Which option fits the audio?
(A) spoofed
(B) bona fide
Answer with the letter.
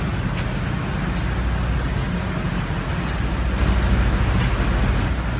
B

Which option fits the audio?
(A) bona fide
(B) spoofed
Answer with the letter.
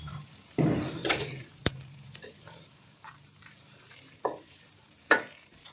B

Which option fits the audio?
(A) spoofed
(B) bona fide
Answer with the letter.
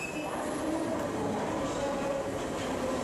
B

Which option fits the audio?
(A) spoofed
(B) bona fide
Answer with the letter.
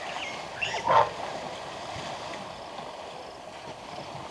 B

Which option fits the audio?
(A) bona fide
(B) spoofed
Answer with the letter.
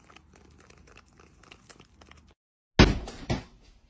A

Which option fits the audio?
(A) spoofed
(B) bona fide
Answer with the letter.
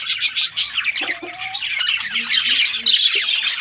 B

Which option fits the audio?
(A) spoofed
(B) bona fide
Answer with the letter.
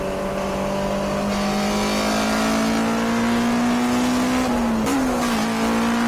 B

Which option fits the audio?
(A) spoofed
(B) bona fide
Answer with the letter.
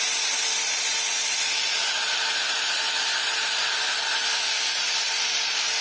B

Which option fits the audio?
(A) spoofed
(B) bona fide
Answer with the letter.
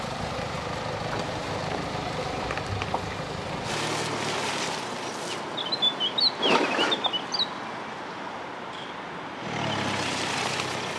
B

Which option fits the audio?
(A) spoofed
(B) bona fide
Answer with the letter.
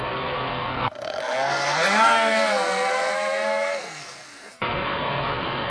A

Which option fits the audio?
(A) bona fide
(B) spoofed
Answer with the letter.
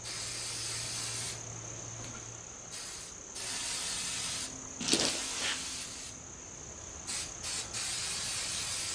A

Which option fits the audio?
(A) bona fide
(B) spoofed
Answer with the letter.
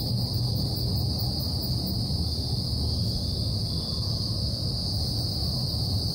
A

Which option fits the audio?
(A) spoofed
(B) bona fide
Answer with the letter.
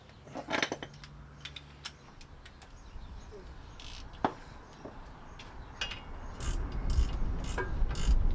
B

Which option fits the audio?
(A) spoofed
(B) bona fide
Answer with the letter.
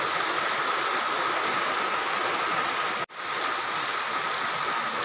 B